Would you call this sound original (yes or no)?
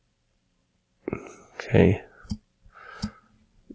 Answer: yes